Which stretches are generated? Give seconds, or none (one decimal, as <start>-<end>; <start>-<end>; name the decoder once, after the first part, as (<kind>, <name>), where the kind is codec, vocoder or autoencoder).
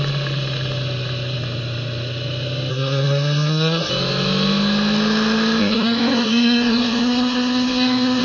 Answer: 2.7-3.9 (codec, SNAC); 5.6-8.2